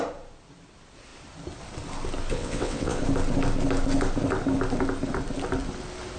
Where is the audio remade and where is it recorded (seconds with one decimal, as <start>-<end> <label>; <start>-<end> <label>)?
0.0-2.3 recorded; 2.3-3.0 remade; 3.0-6.2 recorded